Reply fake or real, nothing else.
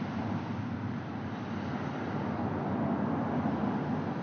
real